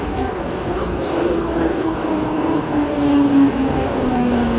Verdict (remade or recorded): remade